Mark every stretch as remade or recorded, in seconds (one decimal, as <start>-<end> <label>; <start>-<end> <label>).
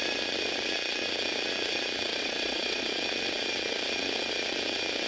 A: 0.0-2.1 recorded; 2.1-2.9 remade; 2.9-5.1 recorded